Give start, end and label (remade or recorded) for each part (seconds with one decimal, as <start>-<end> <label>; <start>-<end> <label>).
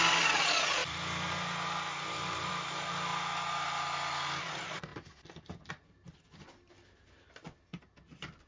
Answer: 0.0-0.8 recorded; 0.8-2.5 remade; 2.5-8.5 recorded